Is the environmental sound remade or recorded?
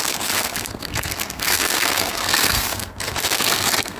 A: remade